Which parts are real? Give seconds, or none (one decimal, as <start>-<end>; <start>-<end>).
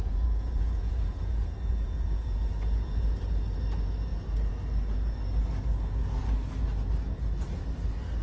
3.2-8.2